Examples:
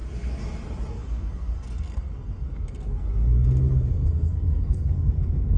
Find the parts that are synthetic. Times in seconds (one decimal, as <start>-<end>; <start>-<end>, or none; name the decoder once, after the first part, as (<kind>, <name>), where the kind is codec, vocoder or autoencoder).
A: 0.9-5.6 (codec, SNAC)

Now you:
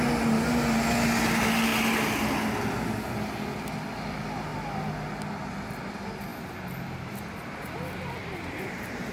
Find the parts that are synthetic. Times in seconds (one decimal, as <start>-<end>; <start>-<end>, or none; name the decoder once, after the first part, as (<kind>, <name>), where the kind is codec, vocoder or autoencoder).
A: 8.2-9.1 (vocoder, BigVGAN v2)

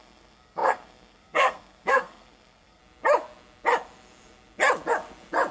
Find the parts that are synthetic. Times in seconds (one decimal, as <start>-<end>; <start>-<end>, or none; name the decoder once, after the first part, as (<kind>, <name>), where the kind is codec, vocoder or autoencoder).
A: 0.0-2.8 (codec, SNAC)

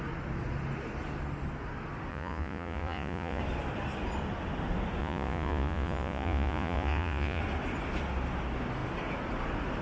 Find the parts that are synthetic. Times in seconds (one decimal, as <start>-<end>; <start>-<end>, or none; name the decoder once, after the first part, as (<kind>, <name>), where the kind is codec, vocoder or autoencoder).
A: 2.1-3.4 (vocoder, Vocos); 5.0-7.4

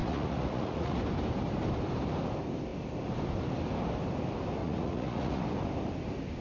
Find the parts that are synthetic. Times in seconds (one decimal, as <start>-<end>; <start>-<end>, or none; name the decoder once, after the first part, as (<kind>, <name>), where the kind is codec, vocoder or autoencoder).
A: 0.0-1.0 (vocoder, Vocos); 4.6-5.4